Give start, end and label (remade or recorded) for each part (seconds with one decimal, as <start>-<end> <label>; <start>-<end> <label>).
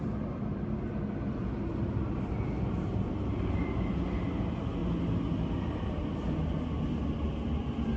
0.0-8.0 recorded